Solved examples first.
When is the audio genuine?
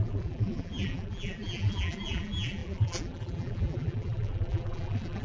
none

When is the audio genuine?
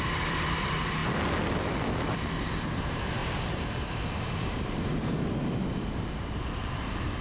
1.0-2.8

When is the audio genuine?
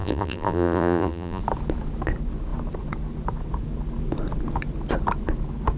1.4-5.8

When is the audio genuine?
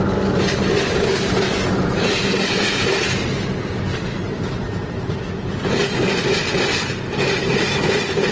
0.0-8.3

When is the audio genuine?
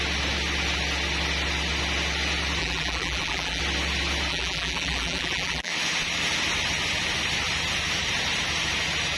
0.0-2.6; 3.6-4.3; 5.7-9.2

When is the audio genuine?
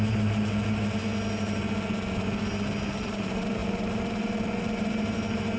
1.0-2.9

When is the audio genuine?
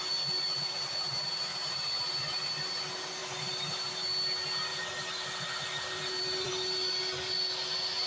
0.0-1.5; 2.6-3.2; 3.9-4.7; 6.5-8.1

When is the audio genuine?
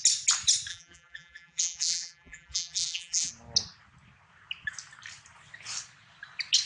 0.0-0.7; 3.3-6.7